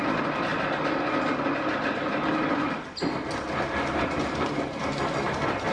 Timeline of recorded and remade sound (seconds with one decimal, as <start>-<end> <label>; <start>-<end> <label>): 0.0-3.0 recorded; 3.0-4.8 remade; 4.8-5.7 recorded